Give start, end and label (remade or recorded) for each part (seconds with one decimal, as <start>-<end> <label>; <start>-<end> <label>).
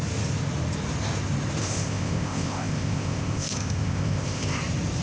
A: 0.0-1.6 recorded; 1.6-4.6 remade; 4.6-5.0 recorded